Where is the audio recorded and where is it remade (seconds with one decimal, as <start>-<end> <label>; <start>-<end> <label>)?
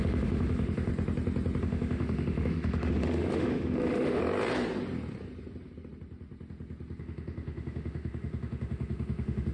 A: 0.0-0.9 remade; 0.9-1.6 recorded; 1.6-4.2 remade; 4.2-7.0 recorded; 7.0-9.5 remade